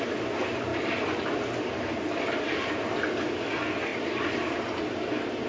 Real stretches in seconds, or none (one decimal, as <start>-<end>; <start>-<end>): 0.0-0.7; 2.7-3.9; 4.8-5.5